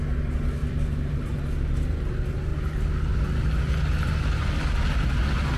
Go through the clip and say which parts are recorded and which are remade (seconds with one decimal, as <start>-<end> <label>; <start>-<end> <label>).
0.0-0.6 recorded; 0.6-1.4 remade; 1.4-5.6 recorded